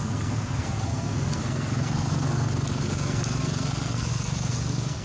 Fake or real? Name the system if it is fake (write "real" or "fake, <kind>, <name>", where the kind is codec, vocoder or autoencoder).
fake, codec, SNAC